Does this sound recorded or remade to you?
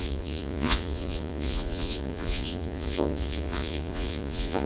remade